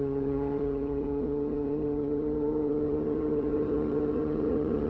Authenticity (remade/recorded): remade